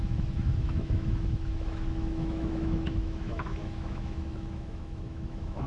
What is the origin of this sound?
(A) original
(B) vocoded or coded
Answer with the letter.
B